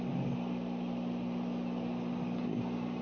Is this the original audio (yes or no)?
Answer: yes